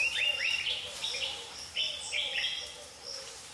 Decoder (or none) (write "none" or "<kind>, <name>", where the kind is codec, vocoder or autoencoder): none